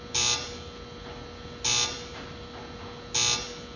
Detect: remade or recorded recorded